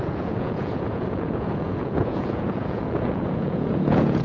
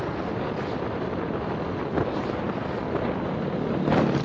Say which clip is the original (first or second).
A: second